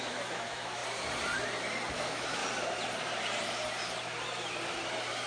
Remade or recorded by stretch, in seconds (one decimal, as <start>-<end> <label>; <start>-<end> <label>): 0.0-0.8 remade; 0.8-1.9 recorded; 1.9-2.4 remade; 2.4-5.3 recorded